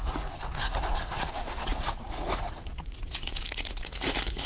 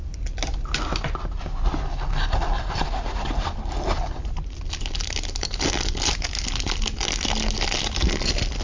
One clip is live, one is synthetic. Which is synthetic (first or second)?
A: first